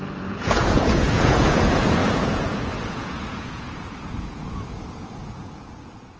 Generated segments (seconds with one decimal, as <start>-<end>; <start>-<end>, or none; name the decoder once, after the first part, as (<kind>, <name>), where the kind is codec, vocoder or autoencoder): 0.0-6.2 (vocoder, Vocos)